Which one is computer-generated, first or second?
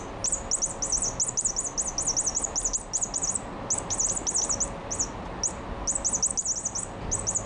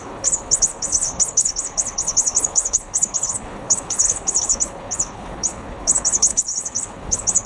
second